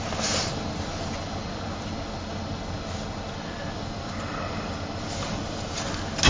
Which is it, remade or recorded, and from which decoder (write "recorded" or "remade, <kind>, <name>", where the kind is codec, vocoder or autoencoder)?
recorded